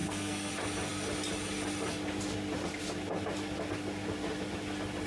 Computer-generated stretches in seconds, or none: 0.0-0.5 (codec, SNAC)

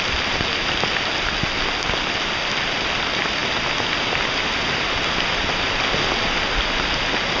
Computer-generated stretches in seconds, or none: none

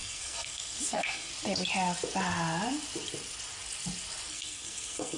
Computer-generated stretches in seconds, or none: 0.0-1.3 (codec, SNAC); 4.3-5.2

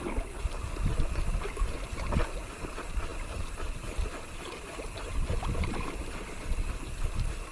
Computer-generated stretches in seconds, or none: none

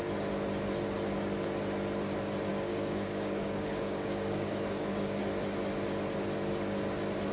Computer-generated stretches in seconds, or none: 2.5-5.2 (codec, DAC)

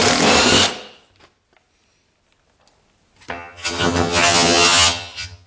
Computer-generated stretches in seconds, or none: 3.3-5.5 (vocoder, HiFi-GAN)

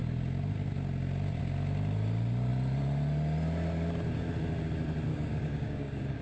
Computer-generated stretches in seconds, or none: 5.1-6.2 (codec, DAC)